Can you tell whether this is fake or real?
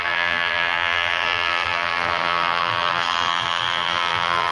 fake